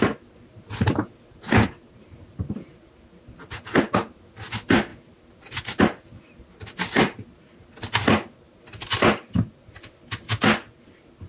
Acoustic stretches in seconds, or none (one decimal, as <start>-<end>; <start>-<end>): 0.0-11.3